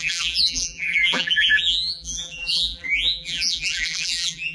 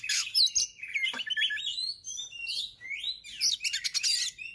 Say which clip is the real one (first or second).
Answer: second